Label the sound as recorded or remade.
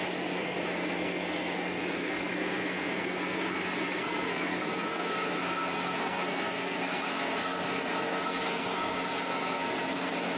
remade